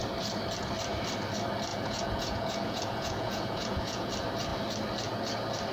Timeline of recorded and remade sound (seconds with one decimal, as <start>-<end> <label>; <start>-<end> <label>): 0.0-1.7 recorded; 1.7-4.1 remade; 4.1-5.7 recorded